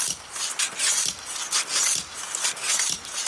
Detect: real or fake real